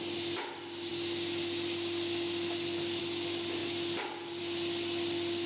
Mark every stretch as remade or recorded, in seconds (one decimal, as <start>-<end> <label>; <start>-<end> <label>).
0.0-5.5 recorded